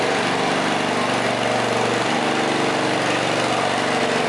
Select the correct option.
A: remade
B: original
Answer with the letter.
B